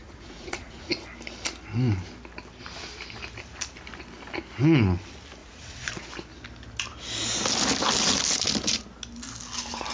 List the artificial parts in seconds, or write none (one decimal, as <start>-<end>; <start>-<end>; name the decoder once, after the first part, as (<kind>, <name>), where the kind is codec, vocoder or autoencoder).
0.0-0.9 (vocoder, Vocos); 5.4-5.9